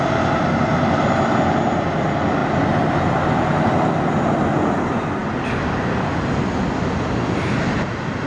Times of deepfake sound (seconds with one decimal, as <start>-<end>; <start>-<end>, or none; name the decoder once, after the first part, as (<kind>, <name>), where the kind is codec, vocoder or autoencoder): none